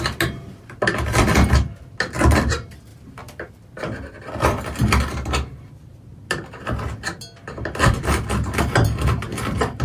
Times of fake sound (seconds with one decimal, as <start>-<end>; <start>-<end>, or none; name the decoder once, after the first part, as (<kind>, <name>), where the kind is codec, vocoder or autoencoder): 2.9-3.5 (vocoder, BigVGAN v2)